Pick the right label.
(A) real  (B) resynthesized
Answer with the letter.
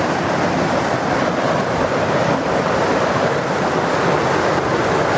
A